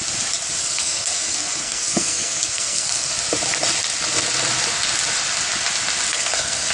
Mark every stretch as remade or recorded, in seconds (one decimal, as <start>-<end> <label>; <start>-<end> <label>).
0.0-0.6 recorded; 0.6-3.1 remade; 3.1-6.1 recorded; 6.1-6.7 remade